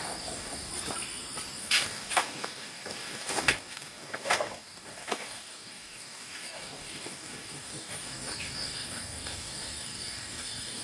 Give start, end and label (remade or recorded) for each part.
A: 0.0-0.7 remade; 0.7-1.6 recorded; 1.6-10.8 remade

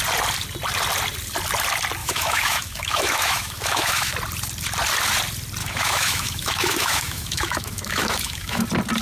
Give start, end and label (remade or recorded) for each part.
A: 0.0-2.0 recorded; 2.0-4.1 remade; 4.1-5.6 recorded; 5.6-8.6 remade; 8.6-9.0 recorded

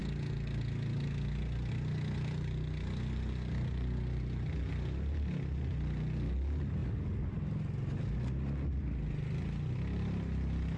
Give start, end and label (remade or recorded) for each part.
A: 0.0-10.8 recorded

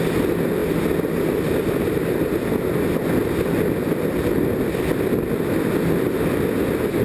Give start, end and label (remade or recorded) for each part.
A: 0.0-7.0 recorded

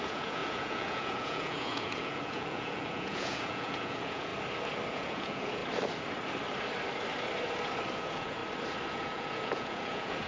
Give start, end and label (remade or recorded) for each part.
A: 0.0-4.3 remade; 4.3-4.9 recorded; 4.9-5.6 remade; 5.6-7.9 recorded; 7.9-8.4 remade; 8.4-8.9 recorded; 8.9-10.3 remade

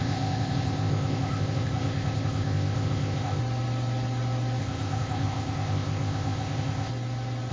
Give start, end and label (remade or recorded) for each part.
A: 0.0-3.4 remade; 3.4-4.6 recorded; 4.6-6.9 remade; 6.9-7.5 recorded